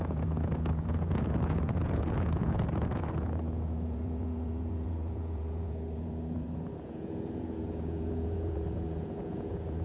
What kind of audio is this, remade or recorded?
remade